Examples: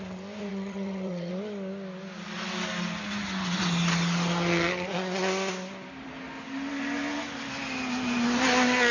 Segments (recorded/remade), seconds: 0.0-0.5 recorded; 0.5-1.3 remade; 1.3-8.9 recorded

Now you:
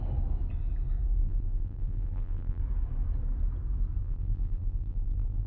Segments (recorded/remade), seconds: 0.0-1.2 recorded; 1.2-2.6 remade; 2.6-4.0 recorded; 4.0-5.5 remade

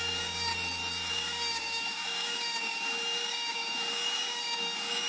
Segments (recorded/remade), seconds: 0.0-0.5 remade; 0.5-1.1 recorded; 1.1-5.1 remade

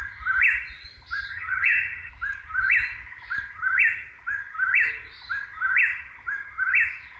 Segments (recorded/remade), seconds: 0.0-1.3 recorded; 1.3-2.1 remade; 2.1-7.2 recorded

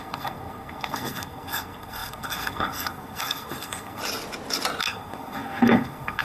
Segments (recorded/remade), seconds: 0.0-4.0 remade; 4.0-4.8 recorded; 4.8-6.2 remade

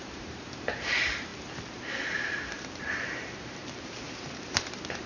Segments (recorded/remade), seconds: 0.0-1.3 remade; 1.3-1.8 recorded; 1.8-5.1 remade